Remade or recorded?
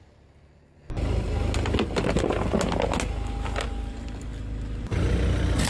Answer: recorded